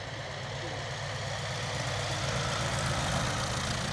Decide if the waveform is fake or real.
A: real